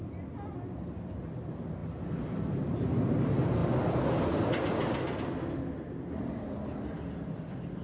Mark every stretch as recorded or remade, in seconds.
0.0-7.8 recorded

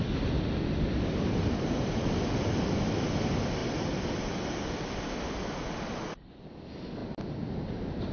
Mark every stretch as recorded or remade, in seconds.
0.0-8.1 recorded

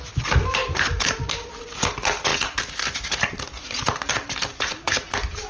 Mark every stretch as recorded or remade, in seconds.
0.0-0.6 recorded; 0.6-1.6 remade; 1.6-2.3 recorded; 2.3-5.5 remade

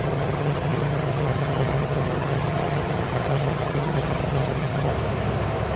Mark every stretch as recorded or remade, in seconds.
0.0-4.9 remade; 4.9-5.8 recorded